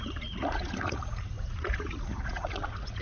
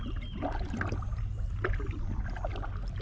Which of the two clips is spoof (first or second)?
first